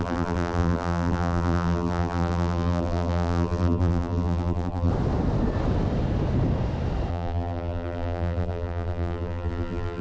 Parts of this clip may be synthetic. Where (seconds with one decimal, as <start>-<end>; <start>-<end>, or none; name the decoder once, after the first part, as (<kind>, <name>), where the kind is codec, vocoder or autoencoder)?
0.0-4.9 (vocoder, BigVGAN v2); 7.1-10.0